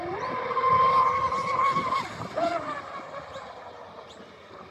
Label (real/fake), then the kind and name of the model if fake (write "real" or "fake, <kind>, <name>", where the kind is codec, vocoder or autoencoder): real